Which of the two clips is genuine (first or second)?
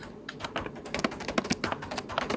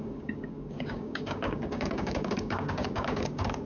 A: first